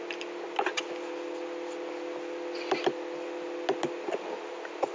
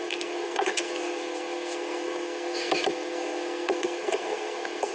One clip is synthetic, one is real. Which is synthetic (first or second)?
second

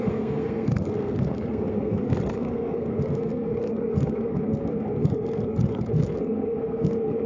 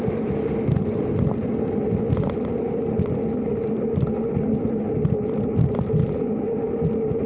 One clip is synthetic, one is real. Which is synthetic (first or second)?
first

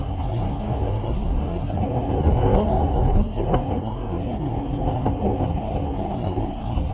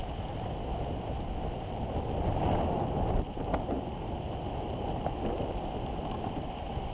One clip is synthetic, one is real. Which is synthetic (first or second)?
first